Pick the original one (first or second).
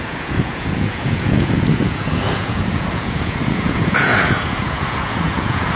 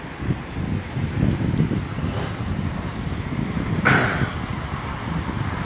second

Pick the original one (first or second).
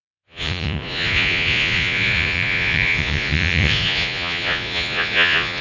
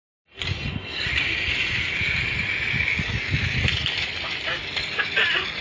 second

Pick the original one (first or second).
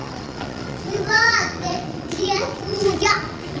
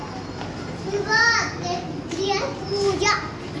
second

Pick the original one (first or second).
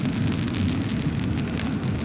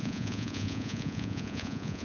first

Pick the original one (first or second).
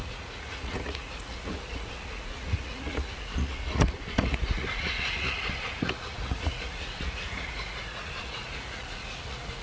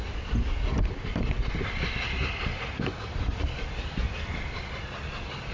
second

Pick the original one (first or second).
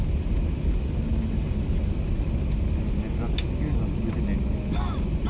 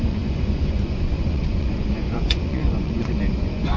first